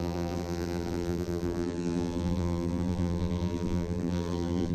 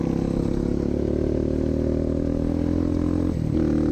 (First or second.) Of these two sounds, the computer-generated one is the first